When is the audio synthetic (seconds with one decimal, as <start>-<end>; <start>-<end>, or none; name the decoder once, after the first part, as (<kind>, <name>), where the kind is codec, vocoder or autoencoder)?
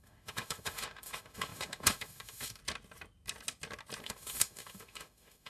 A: 0.0-2.6 (autoencoder, DAC-VAE); 4.0-5.5